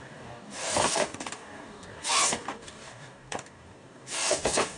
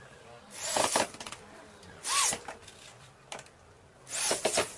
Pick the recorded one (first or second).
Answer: second